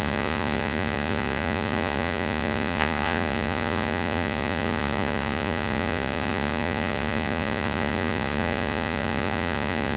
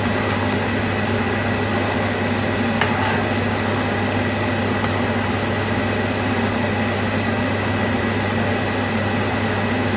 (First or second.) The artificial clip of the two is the first